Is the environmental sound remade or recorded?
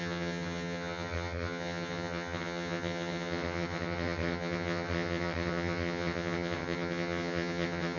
remade